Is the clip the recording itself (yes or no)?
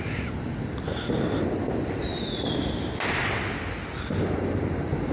yes